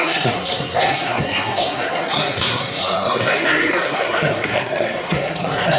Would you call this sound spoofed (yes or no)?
yes